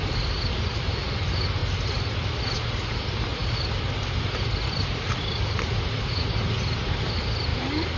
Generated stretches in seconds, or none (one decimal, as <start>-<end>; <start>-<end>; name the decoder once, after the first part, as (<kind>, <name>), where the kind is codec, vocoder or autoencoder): none